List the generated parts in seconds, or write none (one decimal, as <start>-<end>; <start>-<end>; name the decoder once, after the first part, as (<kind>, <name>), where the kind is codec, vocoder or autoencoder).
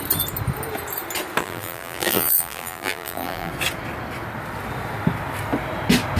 1.4-3.5 (vocoder, BigVGAN v2)